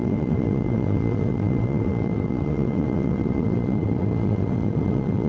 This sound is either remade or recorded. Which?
remade